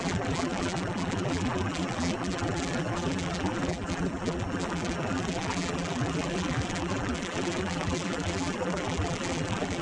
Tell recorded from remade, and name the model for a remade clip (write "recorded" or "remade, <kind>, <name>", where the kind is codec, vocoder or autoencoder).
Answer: remade, vocoder, BigVGAN v2